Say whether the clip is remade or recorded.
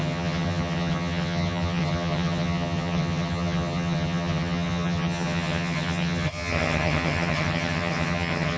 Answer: remade